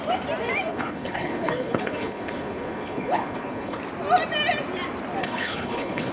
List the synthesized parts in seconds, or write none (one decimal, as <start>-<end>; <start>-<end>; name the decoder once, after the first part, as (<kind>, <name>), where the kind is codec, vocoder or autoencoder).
0.7-3.8 (codec, HILCodec); 5.2-6.1